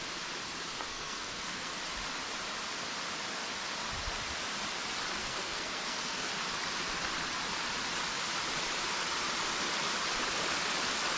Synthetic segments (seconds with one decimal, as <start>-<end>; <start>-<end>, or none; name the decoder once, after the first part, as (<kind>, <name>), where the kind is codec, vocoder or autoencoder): 0.9-1.8 (codec, SNAC); 5.2-6.3